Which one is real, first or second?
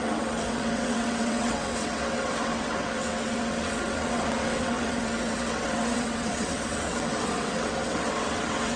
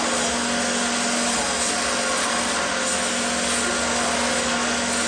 second